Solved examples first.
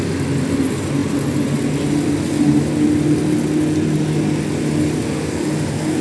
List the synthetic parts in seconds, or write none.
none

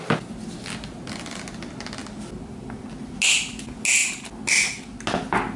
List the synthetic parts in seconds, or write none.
none

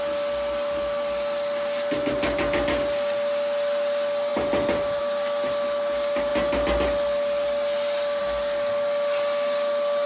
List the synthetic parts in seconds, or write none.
none